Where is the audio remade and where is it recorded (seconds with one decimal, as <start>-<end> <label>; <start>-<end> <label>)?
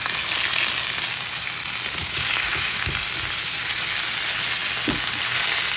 0.0-2.0 recorded; 2.0-2.9 remade; 2.9-5.8 recorded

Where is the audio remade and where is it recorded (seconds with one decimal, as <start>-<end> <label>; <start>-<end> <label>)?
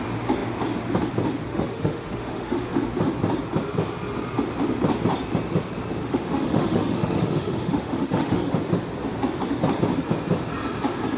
0.0-1.5 recorded; 1.5-2.8 remade; 2.8-6.0 recorded; 6.0-8.5 remade; 8.5-11.2 recorded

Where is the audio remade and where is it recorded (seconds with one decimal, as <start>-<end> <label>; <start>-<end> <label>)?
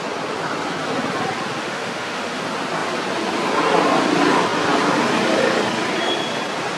0.0-1.6 recorded; 1.6-2.4 remade; 2.4-6.8 recorded